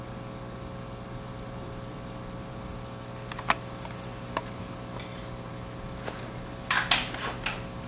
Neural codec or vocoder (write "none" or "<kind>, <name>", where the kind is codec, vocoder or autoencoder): none